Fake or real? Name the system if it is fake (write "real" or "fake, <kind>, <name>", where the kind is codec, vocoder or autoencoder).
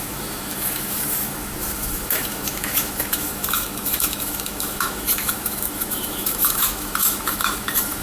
fake, autoencoder, DAC-VAE